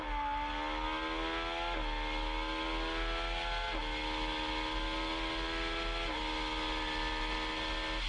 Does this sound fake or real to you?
real